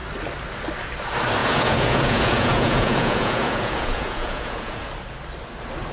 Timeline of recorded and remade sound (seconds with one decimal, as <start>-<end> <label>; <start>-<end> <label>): 0.0-1.4 recorded; 1.4-4.9 remade; 4.9-5.9 recorded